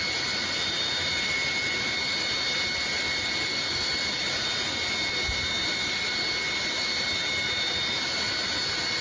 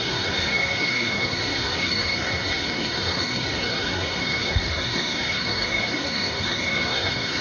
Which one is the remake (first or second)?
second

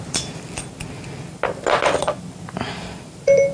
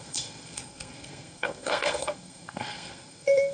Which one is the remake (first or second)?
second